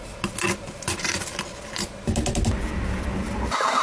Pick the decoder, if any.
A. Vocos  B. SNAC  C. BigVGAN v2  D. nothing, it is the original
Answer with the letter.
D